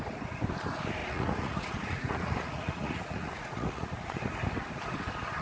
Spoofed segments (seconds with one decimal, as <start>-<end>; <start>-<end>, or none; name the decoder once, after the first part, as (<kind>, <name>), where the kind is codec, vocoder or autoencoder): 1.0-4.2 (vocoder, Vocos)